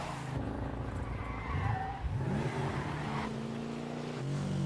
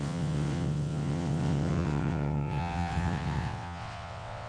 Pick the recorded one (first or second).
first